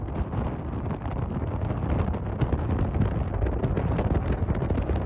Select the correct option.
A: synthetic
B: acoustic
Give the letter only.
B